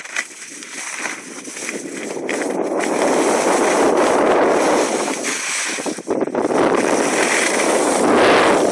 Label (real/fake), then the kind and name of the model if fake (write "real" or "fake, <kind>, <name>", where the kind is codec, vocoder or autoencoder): real